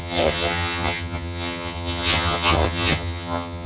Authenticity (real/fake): fake